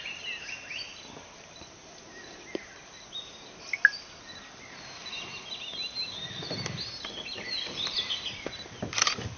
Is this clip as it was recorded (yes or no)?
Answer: yes